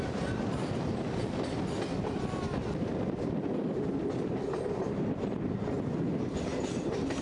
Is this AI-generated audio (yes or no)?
no